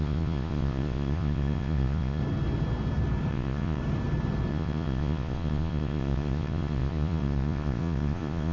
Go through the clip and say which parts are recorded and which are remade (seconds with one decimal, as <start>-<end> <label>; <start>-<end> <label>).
0.0-2.2 remade; 2.2-3.3 recorded; 3.3-3.8 remade; 3.8-4.5 recorded; 4.5-8.5 remade